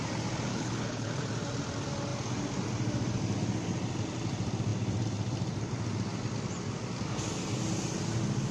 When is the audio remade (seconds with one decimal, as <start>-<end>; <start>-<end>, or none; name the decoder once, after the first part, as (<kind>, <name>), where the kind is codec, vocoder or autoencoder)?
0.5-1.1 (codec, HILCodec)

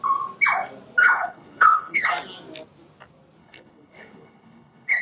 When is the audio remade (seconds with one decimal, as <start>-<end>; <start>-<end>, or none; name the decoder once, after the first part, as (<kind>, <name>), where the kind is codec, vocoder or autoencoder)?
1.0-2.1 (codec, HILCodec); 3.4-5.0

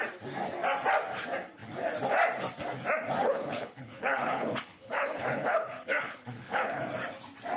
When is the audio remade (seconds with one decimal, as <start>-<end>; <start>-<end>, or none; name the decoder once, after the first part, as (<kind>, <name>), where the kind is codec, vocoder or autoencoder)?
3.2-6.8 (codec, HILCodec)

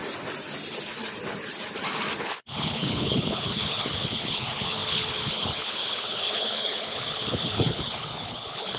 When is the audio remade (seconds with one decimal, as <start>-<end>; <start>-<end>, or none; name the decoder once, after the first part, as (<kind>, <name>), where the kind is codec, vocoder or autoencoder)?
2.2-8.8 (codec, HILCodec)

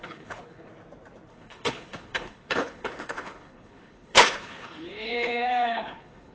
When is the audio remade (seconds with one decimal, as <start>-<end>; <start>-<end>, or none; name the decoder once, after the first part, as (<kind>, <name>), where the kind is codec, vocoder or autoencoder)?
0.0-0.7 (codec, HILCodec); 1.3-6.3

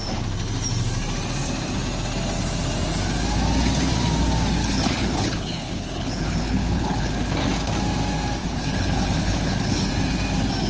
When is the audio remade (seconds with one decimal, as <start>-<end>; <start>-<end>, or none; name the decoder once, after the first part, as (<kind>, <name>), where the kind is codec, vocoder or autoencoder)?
4.6-7.1 (codec, HILCodec); 8.4-9.9

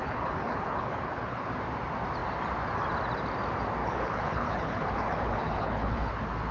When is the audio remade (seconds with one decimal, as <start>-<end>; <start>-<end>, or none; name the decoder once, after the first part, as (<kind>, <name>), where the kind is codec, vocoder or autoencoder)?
0.0-1.5 (codec, HILCodec); 3.8-6.1

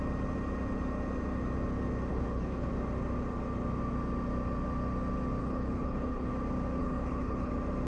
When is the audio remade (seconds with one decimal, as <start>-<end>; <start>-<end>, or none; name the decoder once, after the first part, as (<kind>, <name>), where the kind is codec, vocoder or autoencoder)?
2.1-2.7 (codec, HILCodec); 5.4-6.3; 6.8-7.5